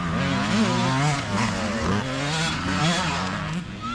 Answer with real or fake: real